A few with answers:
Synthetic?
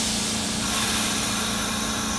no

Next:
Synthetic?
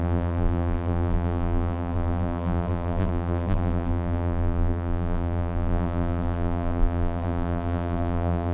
yes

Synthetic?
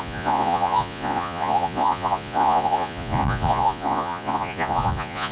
yes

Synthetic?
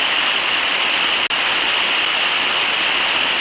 no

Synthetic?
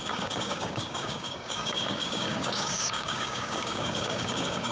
yes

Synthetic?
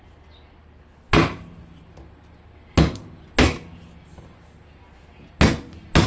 no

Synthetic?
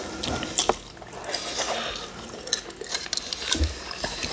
no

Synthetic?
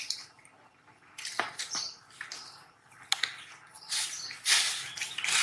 no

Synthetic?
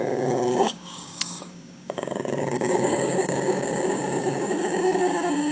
yes